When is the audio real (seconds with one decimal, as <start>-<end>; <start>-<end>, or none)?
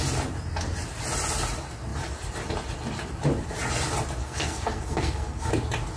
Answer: 0.0-4.2; 5.5-6.0